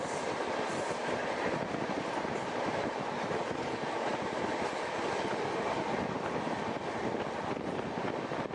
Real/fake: real